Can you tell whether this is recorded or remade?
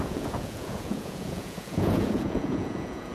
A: remade